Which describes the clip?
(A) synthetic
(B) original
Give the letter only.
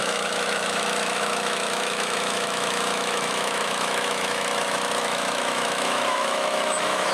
A